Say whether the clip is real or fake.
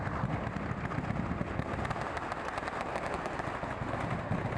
real